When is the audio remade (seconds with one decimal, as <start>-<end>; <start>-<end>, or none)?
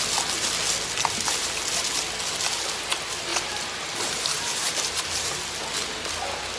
3.3-5.4